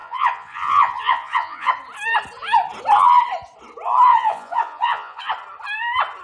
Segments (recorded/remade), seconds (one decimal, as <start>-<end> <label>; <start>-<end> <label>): 0.0-1.7 remade; 1.7-4.1 recorded; 4.1-5.3 remade; 5.3-6.2 recorded